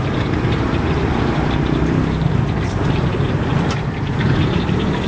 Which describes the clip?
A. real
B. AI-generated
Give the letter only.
B